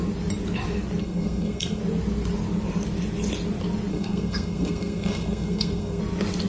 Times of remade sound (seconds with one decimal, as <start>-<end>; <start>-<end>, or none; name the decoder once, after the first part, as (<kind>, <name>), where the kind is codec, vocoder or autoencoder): 1.0-1.8 (codec, SNAC); 3.9-6.0